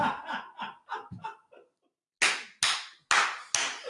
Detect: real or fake real